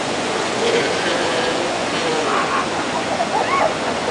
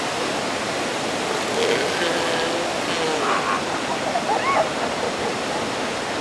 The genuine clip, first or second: second